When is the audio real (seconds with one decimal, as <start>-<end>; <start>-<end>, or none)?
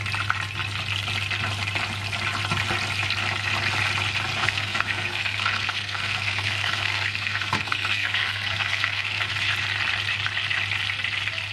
0.0-4.4; 9.3-11.5